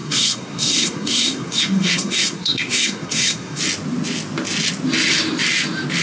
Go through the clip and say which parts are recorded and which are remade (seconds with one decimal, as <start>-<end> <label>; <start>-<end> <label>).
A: 0.0-3.6 remade; 3.6-6.0 recorded